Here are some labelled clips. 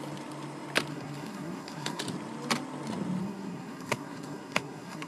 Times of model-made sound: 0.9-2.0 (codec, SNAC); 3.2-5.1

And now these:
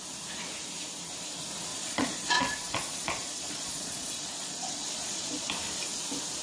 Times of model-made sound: 1.7-5.5 (vocoder, Vocos)

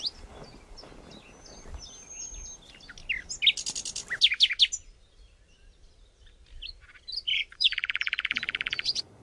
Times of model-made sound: 7.3-9.2 (vocoder, Vocos)

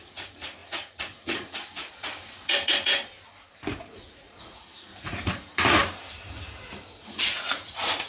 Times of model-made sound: 0.0-3.0 (vocoder, Vocos); 3.7-5.8; 7.0-8.1

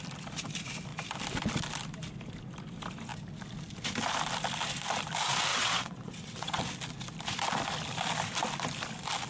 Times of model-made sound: 5.5-6.6 (vocoder, WaveNeXt)